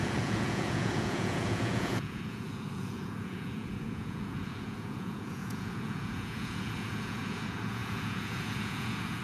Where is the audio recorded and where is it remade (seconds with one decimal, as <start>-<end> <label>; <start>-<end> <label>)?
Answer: 0.0-9.2 remade